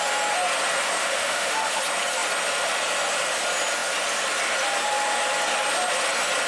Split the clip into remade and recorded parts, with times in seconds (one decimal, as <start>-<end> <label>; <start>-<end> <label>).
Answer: 0.0-1.0 recorded; 1.0-1.8 remade; 1.8-6.5 recorded